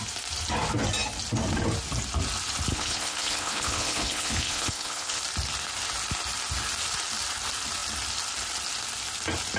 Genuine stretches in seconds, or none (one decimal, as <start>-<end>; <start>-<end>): 0.0-2.7; 5.2-9.6